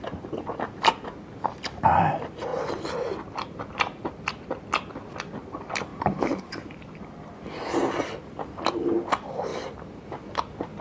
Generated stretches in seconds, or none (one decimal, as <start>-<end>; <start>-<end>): 5.9-7.0; 9.5-10.8